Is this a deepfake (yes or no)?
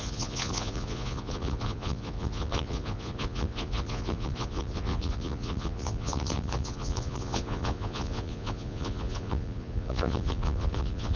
yes